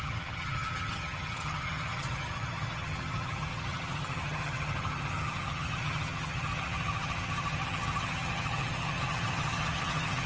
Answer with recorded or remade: remade